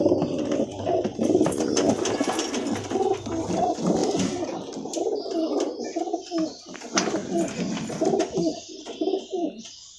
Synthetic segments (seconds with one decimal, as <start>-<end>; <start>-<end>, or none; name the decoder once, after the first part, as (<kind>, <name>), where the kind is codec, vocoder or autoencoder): none